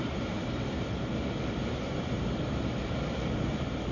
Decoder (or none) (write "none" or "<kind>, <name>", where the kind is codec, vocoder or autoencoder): vocoder, BigVGAN v2